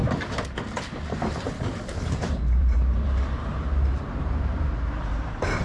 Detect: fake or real fake